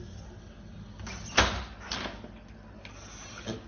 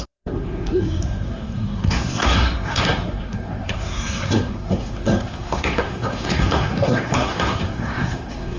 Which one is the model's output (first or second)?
second